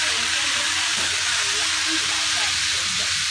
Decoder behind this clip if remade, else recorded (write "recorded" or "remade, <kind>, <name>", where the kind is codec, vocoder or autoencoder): remade, vocoder, BigVGAN v2